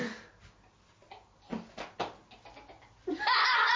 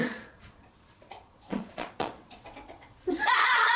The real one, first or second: first